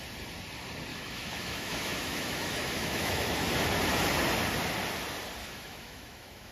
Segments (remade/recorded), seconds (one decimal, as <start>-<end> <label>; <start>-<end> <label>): 0.0-0.9 recorded; 0.9-3.3 remade; 3.3-5.4 recorded; 5.4-6.5 remade